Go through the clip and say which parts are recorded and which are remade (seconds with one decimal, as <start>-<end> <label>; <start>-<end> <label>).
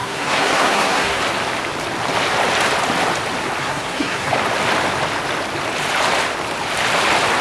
0.0-1.2 remade; 1.2-3.6 recorded; 3.6-4.3 remade; 4.3-7.4 recorded